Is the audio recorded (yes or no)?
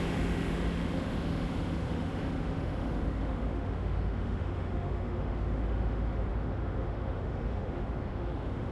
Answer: no